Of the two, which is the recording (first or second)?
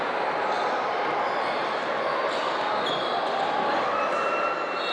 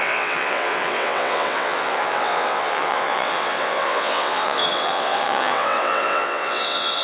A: first